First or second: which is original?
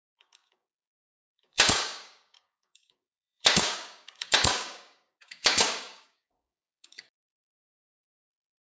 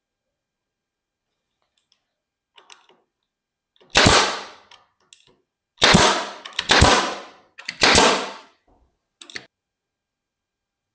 second